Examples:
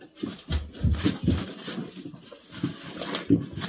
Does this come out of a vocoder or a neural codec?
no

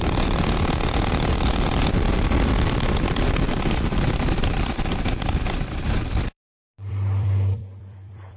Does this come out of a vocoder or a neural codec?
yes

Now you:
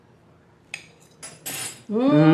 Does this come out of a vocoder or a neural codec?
no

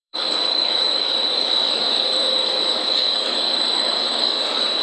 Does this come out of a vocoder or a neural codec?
yes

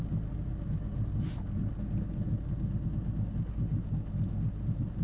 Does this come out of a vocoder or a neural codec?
no